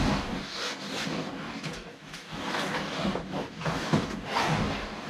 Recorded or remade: remade